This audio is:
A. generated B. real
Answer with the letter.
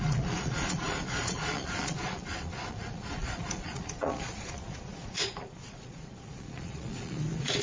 A